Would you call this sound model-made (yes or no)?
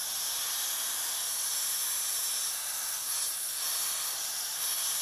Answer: no